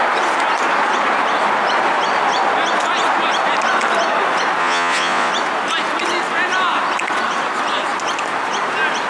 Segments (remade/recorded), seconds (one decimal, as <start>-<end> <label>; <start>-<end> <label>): 0.0-4.6 recorded; 4.6-5.3 remade; 5.3-9.1 recorded